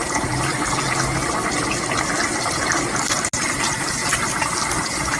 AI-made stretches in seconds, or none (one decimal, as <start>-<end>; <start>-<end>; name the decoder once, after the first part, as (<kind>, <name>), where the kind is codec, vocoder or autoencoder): 0.0-0.5 (vocoder, BigVGAN v2); 2.3-5.2